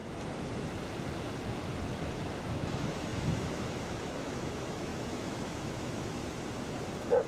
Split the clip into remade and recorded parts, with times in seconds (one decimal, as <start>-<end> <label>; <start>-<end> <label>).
0.0-2.0 recorded; 2.0-6.2 remade; 6.2-7.3 recorded